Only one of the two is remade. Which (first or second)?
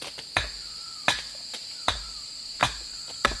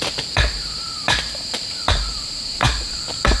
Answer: second